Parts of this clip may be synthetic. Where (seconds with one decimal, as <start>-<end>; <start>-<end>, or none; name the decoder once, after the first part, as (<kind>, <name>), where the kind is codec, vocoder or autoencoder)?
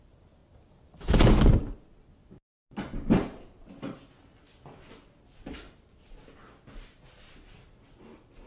none